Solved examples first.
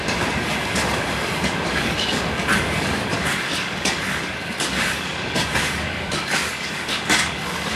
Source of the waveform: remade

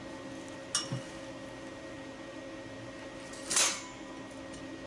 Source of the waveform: recorded